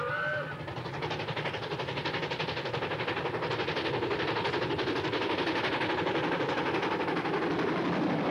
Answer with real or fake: real